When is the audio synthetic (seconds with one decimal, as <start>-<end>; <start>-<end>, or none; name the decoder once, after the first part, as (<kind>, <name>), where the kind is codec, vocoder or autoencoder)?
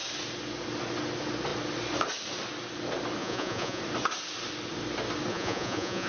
3.2-3.8 (vocoder, Vocos); 5.3-6.1